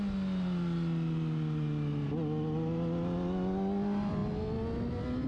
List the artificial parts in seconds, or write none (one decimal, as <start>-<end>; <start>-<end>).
none